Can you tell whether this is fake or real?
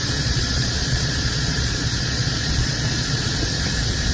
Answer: fake